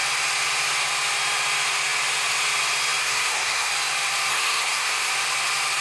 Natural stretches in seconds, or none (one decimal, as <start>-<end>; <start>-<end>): 0.0-3.0; 3.7-4.3; 5.1-5.8